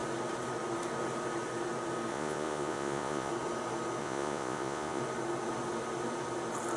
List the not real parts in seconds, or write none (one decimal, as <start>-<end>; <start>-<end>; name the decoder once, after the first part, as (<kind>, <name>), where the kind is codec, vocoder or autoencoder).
2.1-3.3 (vocoder, Vocos); 4.0-5.0